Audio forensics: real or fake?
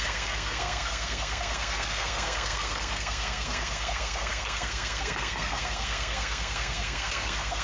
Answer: fake